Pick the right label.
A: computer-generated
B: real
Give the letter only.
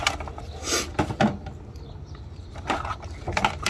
B